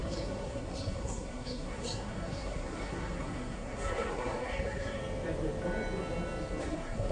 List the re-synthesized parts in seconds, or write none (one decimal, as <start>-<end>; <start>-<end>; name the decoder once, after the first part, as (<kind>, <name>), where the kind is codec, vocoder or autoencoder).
0.0-5.0 (codec, SNAC); 6.6-7.1

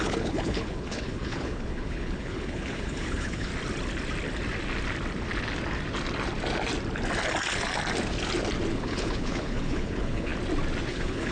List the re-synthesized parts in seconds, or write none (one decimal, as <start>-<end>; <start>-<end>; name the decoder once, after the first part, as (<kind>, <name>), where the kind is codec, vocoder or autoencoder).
0.0-3.5 (codec, HILCodec); 8.7-10.3; 10.9-11.3

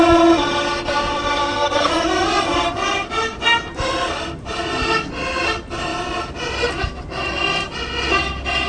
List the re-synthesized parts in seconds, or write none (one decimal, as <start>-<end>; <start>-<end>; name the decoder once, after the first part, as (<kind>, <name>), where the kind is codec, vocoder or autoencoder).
1.4-1.9 (codec, SNAC)

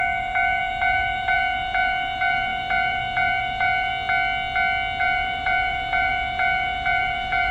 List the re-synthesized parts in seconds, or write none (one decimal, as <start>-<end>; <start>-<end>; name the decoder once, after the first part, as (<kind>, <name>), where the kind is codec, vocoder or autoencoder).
0.0-3.9 (vocoder, BigVGAN v2); 5.0-7.5

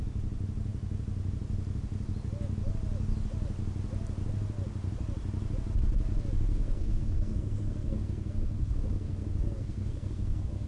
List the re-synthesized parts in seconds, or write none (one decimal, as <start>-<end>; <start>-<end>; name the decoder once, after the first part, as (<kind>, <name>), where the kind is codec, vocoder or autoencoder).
6.5-10.7 (codec, SNAC)